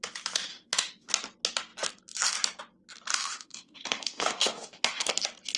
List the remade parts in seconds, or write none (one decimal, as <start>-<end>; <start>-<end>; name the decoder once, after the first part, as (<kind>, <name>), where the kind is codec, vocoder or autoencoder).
0.5-1.1 (autoencoder, DAC-VAE); 3.1-5.1